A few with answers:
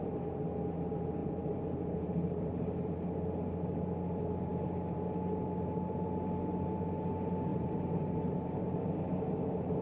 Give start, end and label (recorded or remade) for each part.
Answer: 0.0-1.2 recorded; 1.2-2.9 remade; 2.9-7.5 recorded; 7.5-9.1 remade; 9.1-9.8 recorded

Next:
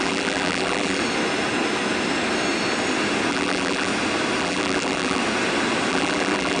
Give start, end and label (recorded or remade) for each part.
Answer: 0.0-1.0 remade; 1.0-3.3 recorded; 3.3-3.9 remade; 3.9-4.4 recorded; 4.4-5.2 remade; 5.2-5.9 recorded; 5.9-6.6 remade